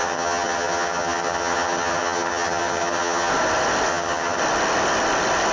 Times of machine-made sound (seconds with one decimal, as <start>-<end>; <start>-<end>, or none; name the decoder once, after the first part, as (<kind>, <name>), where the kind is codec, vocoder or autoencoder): 0.0-3.3 (vocoder, HiFi-GAN); 3.9-4.4